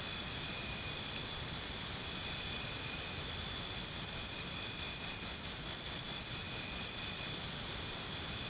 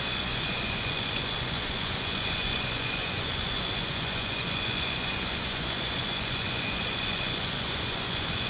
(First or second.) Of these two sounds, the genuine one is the first